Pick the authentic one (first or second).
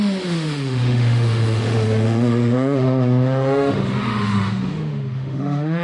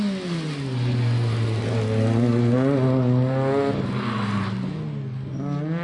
second